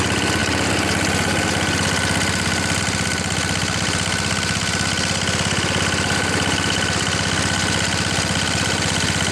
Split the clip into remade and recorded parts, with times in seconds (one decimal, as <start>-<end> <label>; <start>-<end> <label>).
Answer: 0.0-9.3 recorded